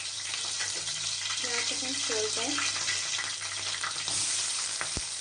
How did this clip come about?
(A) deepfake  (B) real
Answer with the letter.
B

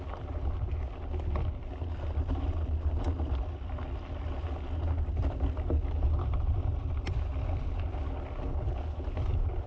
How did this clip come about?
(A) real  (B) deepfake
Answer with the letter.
A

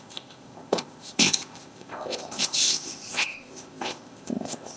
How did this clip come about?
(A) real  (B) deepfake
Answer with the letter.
B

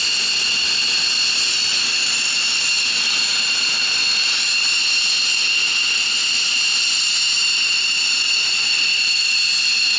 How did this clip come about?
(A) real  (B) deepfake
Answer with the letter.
A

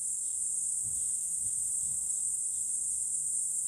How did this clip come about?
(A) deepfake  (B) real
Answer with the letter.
A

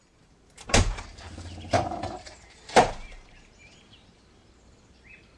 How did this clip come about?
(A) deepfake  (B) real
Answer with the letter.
A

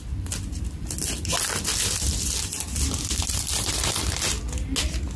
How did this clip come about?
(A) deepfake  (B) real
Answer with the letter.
B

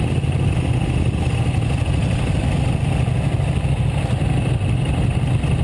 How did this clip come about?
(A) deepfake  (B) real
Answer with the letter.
B